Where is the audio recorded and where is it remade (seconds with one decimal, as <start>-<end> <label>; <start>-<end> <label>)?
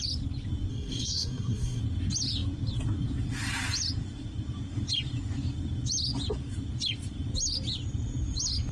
0.0-0.7 recorded; 0.7-1.8 remade; 1.8-8.7 recorded